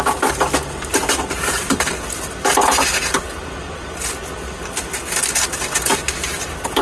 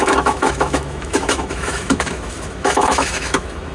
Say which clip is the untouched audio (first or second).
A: first